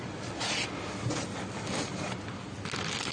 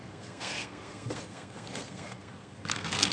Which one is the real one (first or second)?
first